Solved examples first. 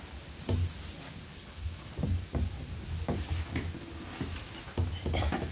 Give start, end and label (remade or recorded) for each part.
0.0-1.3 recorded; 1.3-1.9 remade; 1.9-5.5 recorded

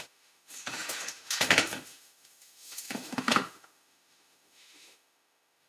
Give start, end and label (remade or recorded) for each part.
0.0-5.7 remade

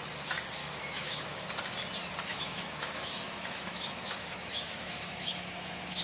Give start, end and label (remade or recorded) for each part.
0.0-0.6 recorded; 0.6-1.5 remade; 1.5-2.3 recorded; 2.3-6.0 remade

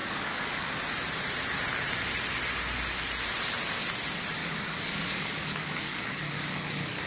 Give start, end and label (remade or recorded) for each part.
0.0-0.8 remade; 0.8-4.4 recorded; 4.4-7.1 remade

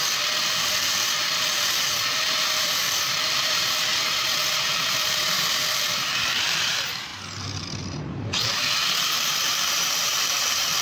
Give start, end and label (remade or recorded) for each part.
0.0-7.1 remade; 7.1-8.1 recorded; 8.1-10.8 remade

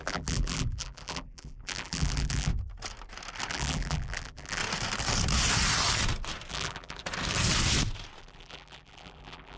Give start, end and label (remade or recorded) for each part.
0.0-2.5 remade; 2.5-3.5 recorded; 3.5-4.6 remade; 4.6-6.5 recorded; 6.5-7.0 remade; 7.0-8.2 recorded; 8.2-9.6 remade

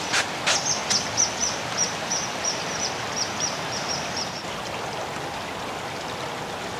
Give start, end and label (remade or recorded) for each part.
0.0-1.4 recorded; 1.4-4.9 remade; 4.9-6.8 recorded